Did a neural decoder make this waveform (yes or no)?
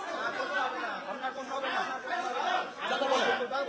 yes